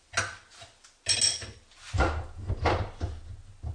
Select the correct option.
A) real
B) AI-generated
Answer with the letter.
A